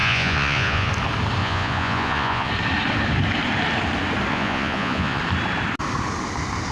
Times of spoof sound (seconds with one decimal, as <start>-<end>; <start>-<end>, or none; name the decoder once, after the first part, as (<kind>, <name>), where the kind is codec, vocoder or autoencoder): 0.0-0.9 (vocoder, Vocos); 1.4-2.5; 4.3-5.2